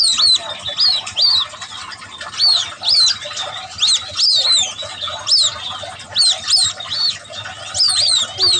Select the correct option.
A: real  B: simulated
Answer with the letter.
A